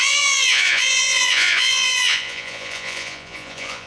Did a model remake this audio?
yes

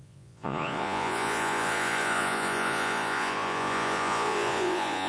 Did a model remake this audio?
yes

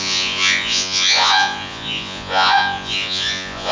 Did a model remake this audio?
yes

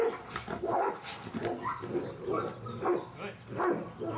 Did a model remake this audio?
no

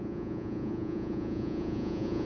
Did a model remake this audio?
yes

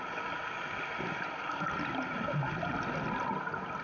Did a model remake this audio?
no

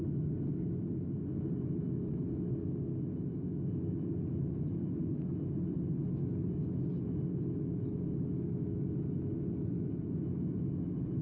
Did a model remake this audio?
no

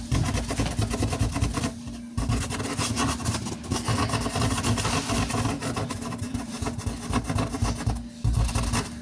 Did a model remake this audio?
no